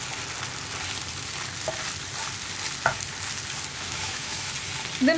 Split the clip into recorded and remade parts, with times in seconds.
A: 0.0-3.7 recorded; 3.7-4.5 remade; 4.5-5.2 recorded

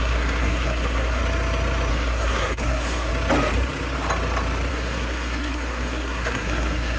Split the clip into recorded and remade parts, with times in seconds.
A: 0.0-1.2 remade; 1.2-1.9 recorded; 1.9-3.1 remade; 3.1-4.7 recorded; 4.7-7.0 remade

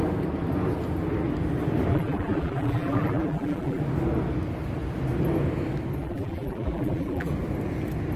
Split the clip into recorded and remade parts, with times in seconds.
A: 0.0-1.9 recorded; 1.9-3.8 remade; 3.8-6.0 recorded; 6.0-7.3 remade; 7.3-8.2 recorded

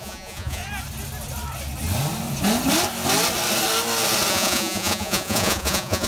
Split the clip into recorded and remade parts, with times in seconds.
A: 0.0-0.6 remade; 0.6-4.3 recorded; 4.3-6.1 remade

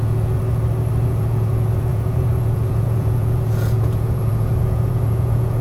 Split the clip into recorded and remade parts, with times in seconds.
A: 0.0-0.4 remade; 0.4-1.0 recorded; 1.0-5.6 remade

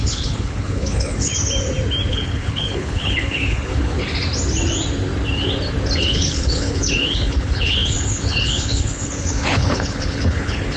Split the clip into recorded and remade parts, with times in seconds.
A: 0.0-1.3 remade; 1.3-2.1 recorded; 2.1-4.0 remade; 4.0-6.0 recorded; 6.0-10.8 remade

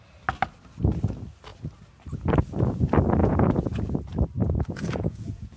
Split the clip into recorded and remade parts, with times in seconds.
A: 0.0-3.2 recorded; 3.2-3.9 remade; 3.9-4.4 recorded; 4.4-5.6 remade